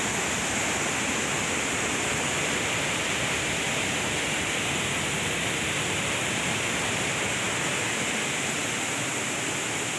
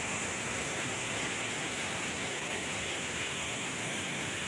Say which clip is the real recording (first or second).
first